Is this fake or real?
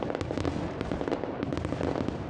real